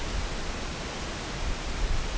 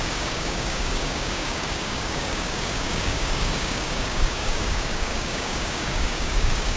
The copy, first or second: second